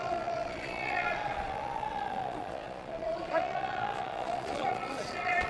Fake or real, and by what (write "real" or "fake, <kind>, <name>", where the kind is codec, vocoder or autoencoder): fake, vocoder, Vocos